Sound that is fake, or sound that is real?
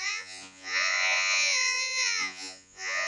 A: fake